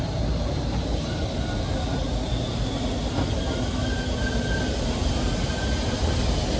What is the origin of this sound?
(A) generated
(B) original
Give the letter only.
B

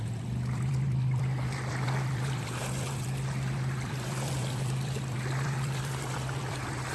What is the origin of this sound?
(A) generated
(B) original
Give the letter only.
A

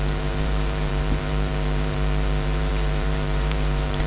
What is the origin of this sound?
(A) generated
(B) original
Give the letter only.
A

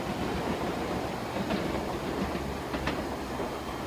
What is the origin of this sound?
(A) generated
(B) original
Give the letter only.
B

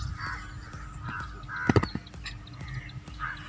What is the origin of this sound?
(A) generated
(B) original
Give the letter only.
B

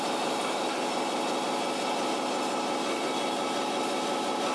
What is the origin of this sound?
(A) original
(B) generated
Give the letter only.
A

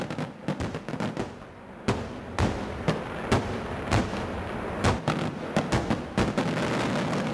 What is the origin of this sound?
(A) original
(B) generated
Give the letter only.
A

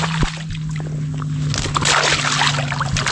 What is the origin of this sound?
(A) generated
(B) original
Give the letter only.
B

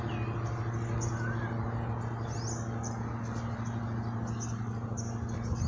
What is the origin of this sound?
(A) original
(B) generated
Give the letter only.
A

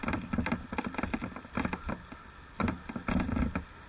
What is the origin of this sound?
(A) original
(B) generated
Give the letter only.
A